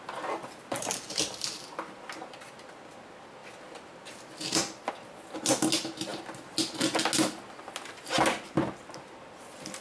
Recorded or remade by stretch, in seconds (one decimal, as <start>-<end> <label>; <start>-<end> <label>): 0.0-9.8 recorded

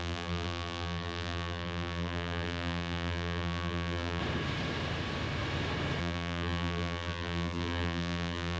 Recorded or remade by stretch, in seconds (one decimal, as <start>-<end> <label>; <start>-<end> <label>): 0.0-4.2 remade; 4.2-6.0 recorded; 6.0-8.6 remade

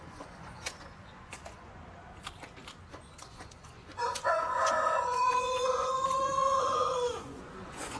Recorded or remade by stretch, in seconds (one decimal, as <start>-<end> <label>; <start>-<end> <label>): 0.0-1.8 remade; 1.8-2.9 recorded; 2.9-8.0 remade

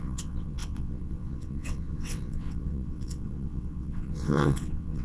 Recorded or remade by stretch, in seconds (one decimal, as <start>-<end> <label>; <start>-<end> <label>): 0.0-5.0 remade

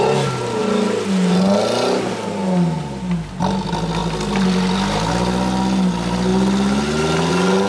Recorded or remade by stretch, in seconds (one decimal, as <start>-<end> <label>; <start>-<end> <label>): 0.0-7.7 recorded